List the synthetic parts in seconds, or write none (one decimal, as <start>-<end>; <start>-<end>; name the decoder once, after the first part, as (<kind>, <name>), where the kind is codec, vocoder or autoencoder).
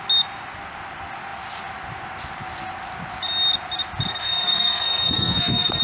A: 4.1-5.8 (codec, SNAC)